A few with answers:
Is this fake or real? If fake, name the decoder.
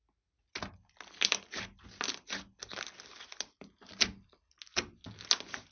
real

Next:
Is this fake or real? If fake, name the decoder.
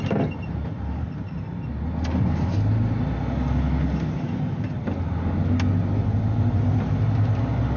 real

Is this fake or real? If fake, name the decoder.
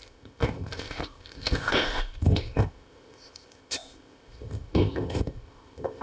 fake, codec, ZipCodec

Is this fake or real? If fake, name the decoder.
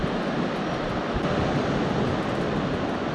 real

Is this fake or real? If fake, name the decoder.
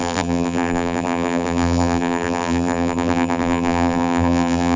fake, vocoder, BigVGAN v2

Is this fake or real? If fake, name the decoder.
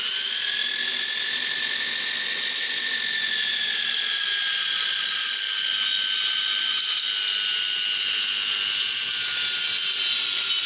real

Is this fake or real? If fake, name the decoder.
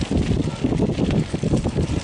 real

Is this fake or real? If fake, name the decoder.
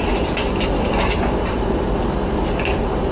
real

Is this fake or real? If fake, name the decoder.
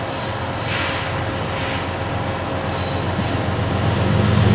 real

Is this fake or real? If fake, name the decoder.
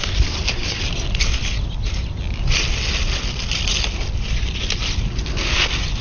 real